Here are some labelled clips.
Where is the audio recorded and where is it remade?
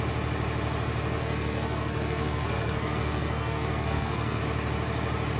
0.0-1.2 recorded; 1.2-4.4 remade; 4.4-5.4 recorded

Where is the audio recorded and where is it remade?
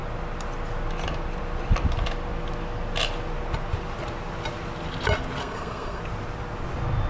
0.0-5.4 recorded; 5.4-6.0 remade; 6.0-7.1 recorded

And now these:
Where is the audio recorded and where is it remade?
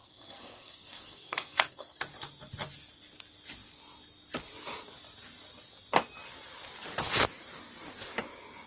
0.0-2.0 remade; 2.0-8.7 recorded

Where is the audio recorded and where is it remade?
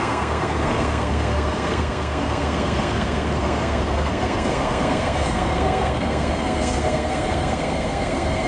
0.0-8.5 remade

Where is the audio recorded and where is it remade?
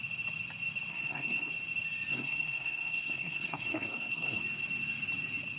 0.0-0.9 recorded; 0.9-1.5 remade; 1.5-2.1 recorded; 2.1-4.4 remade; 4.4-5.6 recorded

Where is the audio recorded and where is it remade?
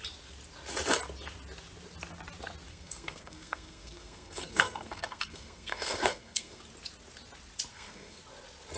0.0-2.7 recorded; 2.7-6.6 remade; 6.6-7.7 recorded; 7.7-8.2 remade; 8.2-8.8 recorded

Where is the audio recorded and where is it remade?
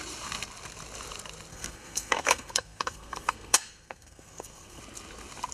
0.0-1.5 recorded; 1.5-4.8 remade; 4.8-5.5 recorded